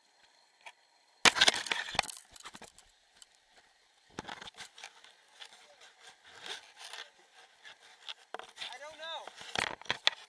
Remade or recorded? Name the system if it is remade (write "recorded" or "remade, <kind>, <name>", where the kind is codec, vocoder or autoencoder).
recorded